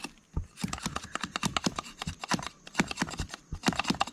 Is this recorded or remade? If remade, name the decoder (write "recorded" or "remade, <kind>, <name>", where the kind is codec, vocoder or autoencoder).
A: recorded